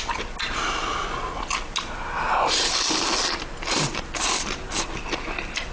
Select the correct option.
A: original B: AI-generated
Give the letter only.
A